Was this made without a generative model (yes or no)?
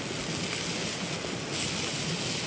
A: yes